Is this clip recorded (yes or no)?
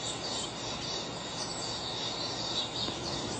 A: yes